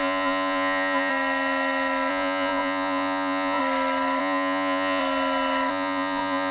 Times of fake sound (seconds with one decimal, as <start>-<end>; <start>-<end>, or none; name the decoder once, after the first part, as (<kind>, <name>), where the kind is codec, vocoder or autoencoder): 0.0-1.1 (vocoder, Vocos); 2.1-3.6; 4.2-5.0; 5.7-6.5